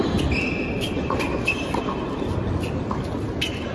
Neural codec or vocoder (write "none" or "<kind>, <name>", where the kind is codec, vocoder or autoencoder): none